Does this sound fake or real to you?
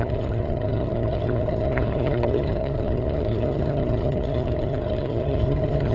fake